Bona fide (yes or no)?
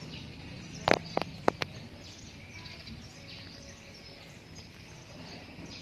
yes